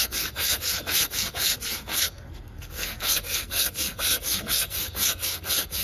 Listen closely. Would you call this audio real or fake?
fake